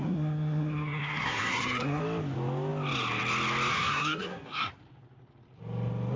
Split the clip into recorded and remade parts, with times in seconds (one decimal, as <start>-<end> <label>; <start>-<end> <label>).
0.0-2.0 remade; 2.0-3.7 recorded; 3.7-4.7 remade; 4.7-6.2 recorded